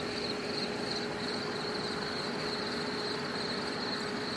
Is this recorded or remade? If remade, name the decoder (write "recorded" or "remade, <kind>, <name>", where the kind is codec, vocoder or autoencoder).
recorded